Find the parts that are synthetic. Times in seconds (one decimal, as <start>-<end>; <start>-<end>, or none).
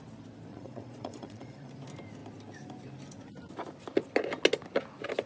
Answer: 0.5-1.7